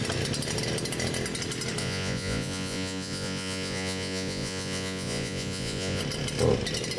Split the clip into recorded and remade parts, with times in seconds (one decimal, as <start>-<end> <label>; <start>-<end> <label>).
0.0-1.8 recorded; 1.8-6.0 remade; 6.0-7.0 recorded